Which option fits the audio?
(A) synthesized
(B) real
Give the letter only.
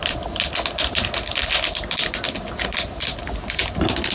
B